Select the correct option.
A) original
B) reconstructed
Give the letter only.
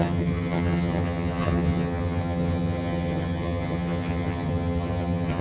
B